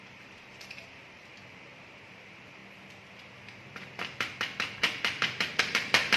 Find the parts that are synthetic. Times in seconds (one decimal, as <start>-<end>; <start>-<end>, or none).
0.0-2.6; 5.6-6.2